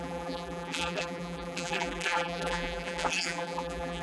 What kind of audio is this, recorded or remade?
remade